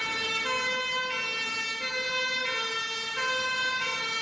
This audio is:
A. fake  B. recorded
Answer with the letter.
B